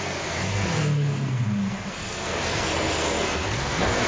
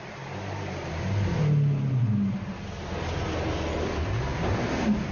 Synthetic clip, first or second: first